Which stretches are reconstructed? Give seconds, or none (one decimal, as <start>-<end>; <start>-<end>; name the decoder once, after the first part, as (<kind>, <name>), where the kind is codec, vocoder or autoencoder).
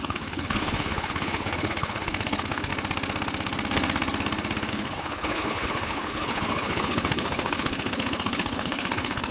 0.0-2.7 (codec, HILCodec); 4.7-9.3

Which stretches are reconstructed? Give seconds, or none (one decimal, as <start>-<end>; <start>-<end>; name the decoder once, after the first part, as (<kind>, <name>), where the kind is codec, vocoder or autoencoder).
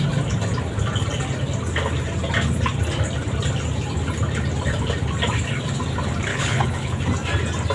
6.3-7.0 (codec, HILCodec)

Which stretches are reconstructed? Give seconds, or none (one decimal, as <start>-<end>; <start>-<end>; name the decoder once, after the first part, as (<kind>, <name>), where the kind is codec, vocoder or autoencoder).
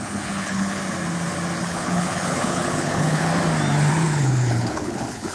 0.0-0.8 (codec, HILCodec); 1.6-3.3; 3.9-5.3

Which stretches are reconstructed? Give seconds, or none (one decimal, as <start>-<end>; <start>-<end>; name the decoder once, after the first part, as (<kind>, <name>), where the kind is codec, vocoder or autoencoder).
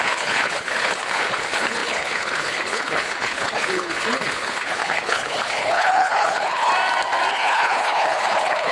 0.0-6.7 (codec, HILCodec); 7.3-8.7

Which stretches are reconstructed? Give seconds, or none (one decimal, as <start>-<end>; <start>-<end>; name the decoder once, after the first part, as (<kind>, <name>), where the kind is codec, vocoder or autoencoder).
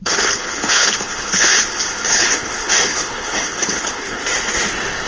0.0-1.5 (codec, HILCodec); 2.1-4.2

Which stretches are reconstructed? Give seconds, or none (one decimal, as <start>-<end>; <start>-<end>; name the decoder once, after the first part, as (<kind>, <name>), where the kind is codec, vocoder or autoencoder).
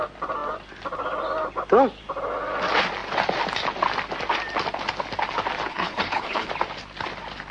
5.7-6.5 (codec, HILCodec)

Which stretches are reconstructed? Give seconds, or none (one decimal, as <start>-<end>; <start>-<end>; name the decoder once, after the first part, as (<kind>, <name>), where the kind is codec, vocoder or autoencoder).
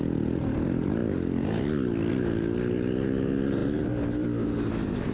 none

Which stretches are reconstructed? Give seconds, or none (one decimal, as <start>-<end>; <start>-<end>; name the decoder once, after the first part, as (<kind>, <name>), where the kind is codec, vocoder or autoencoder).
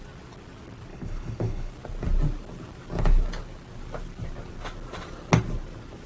0.9-1.7 (codec, HILCodec)